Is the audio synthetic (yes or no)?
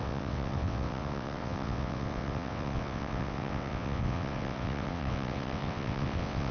yes